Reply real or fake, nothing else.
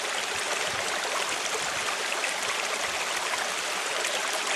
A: real